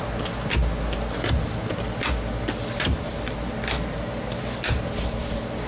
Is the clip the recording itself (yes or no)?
yes